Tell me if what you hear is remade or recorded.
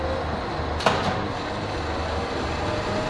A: recorded